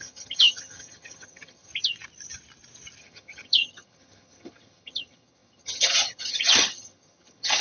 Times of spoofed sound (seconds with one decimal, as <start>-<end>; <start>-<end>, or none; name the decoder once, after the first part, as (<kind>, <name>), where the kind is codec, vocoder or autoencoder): 0.0-1.7 (vocoder, HiFi-GAN); 3.0-7.6